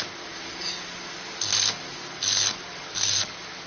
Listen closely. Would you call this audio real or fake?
real